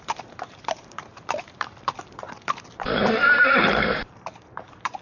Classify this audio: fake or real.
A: fake